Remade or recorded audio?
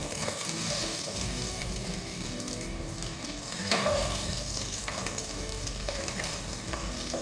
remade